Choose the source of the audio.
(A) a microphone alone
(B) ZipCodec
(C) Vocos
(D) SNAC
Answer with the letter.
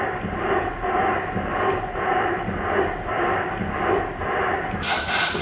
A